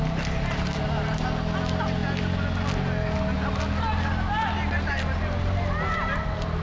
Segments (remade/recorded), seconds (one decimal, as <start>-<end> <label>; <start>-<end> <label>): 0.0-6.6 recorded